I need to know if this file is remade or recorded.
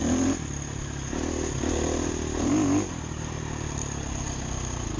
recorded